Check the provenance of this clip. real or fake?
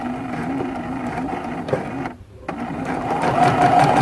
real